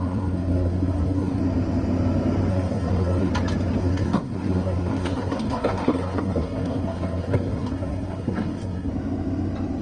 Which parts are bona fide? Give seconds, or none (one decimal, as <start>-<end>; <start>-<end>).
1.4-2.5; 3.3-3.8; 8.9-9.8